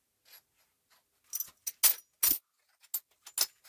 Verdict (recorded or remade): recorded